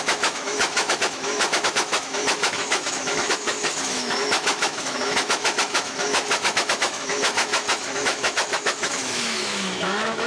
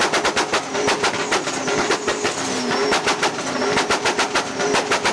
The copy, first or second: first